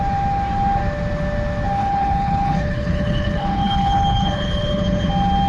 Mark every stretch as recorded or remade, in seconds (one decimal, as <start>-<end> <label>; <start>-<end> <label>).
0.0-1.8 recorded; 1.8-5.1 remade; 5.1-5.5 recorded